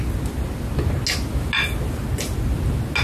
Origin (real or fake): real